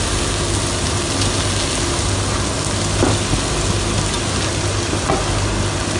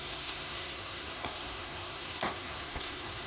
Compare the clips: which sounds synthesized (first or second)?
second